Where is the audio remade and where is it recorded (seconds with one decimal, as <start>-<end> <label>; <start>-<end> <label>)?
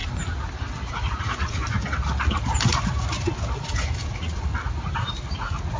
0.0-0.9 recorded; 0.9-1.6 remade; 1.6-4.1 recorded; 4.1-4.5 remade; 4.5-5.3 recorded; 5.3-5.8 remade